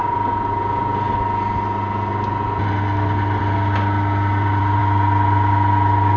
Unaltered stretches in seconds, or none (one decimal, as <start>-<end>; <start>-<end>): 0.0-6.2